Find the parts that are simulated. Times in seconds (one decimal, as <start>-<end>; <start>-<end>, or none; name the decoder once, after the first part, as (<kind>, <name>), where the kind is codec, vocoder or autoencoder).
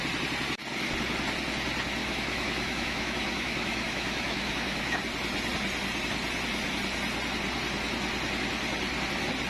2.0-5.0 (autoencoder, DAC-VAE)